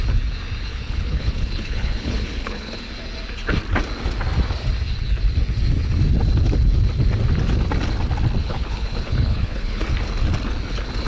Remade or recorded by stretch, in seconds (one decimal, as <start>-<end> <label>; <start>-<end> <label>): 0.0-0.7 recorded; 0.7-2.8 remade; 2.8-8.4 recorded; 8.4-9.8 remade; 9.8-11.1 recorded